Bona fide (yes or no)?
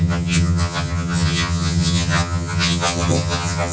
no